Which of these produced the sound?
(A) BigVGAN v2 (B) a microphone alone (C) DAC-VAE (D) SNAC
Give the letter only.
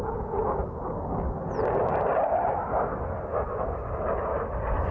B